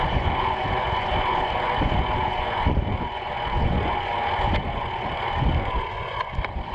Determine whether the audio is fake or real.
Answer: fake